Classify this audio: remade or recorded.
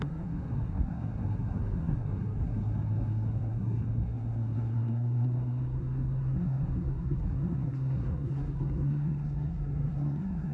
remade